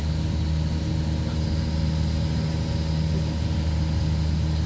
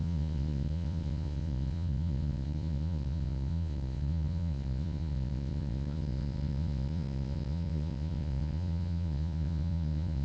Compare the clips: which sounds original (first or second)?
first